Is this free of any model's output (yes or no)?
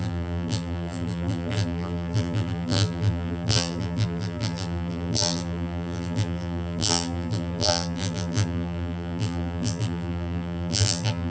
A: no